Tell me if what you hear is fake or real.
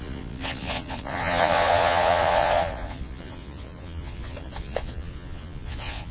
fake